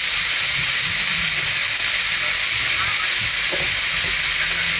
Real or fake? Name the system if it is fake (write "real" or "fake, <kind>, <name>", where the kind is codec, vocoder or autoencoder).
real